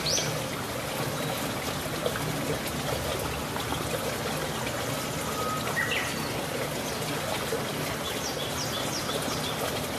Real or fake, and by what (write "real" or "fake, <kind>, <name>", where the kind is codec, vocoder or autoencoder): real